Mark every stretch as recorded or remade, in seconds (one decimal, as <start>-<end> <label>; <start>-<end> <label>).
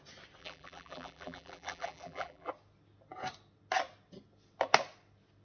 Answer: 0.0-0.4 recorded; 0.4-2.5 remade; 2.5-5.4 recorded